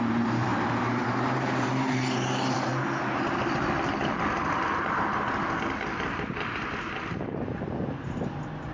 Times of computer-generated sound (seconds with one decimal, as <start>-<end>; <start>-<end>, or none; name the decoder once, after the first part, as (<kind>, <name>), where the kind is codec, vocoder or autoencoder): 0.0-2.7 (vocoder, BigVGAN v2); 7.9-8.7